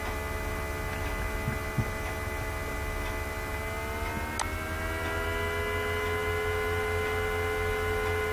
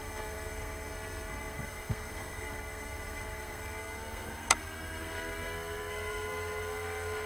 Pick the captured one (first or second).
first